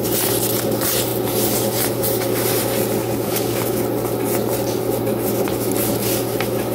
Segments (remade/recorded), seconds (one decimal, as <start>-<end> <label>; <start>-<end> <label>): 0.0-3.0 recorded; 3.0-3.8 remade; 3.8-6.7 recorded